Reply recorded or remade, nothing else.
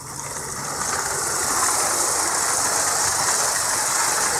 recorded